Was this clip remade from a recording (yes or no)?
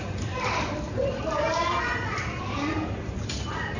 no